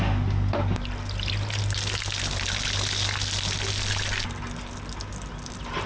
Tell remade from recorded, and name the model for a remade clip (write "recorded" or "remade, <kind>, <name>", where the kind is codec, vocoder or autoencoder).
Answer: recorded